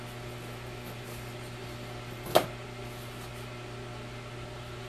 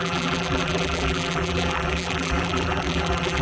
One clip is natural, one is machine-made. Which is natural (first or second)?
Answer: first